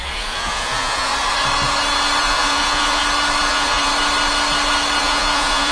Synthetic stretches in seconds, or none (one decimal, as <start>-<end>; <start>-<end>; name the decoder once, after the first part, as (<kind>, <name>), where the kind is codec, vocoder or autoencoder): 0.0-1.1 (vocoder, Vocos); 2.2-3.0; 3.5-3.9; 5.0-5.7